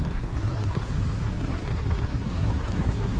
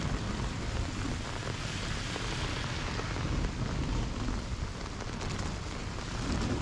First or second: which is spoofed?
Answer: first